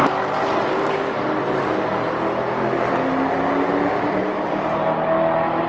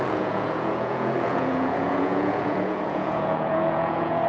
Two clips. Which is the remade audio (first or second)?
second